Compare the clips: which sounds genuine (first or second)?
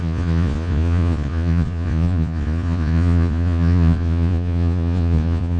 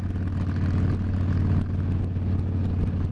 second